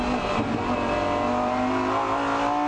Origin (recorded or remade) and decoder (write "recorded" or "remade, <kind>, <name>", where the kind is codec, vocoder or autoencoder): recorded